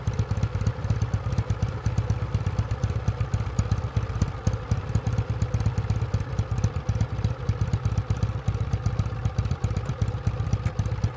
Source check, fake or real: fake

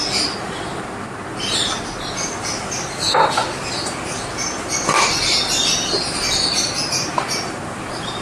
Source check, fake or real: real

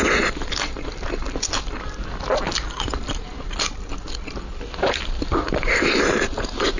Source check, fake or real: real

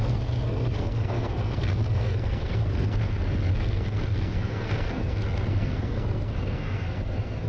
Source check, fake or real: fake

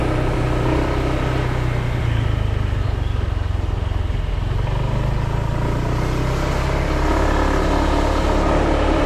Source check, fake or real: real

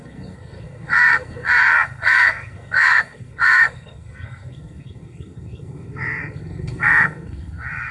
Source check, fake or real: fake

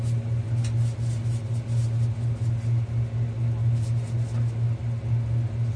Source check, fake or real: real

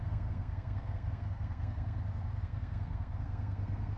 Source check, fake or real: fake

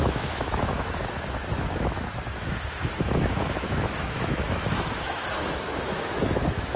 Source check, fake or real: fake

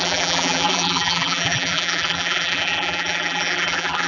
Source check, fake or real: fake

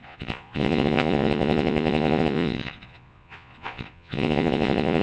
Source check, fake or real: fake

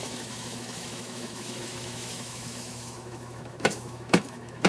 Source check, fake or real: fake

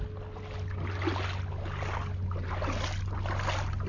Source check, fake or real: real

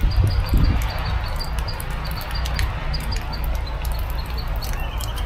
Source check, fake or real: real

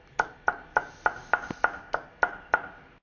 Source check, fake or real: real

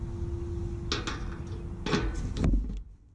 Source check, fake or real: real